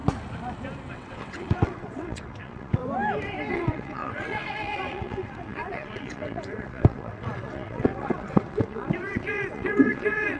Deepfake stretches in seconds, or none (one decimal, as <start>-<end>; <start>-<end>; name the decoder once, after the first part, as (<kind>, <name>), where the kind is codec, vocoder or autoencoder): 0.9-2.8 (vocoder, WaveNeXt); 3.5-10.4